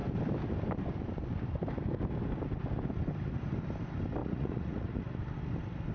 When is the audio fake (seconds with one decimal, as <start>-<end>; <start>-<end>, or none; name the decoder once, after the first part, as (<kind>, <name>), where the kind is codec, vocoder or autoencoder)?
4.2-5.0 (vocoder, Vocos)